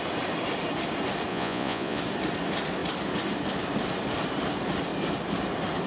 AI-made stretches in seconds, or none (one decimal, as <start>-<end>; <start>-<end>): 1.3-2.0